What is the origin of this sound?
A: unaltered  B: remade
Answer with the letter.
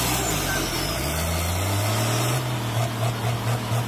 A